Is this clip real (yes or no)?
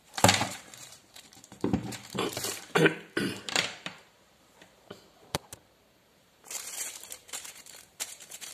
no